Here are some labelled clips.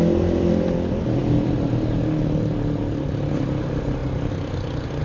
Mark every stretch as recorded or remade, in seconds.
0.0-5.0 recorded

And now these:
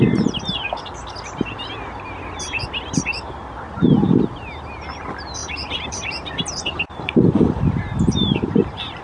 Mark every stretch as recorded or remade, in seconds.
0.0-5.4 recorded; 5.4-9.0 remade

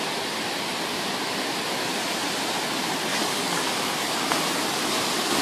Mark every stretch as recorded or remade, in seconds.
0.0-3.1 recorded; 3.1-4.3 remade; 4.3-5.4 recorded